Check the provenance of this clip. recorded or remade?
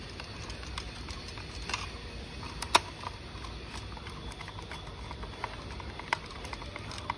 recorded